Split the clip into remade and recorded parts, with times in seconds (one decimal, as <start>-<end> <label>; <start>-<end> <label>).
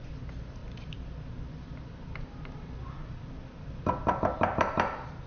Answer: 0.0-5.3 recorded